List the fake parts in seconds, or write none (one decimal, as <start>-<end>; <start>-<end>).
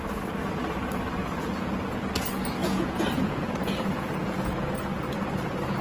1.2-2.1; 2.6-4.7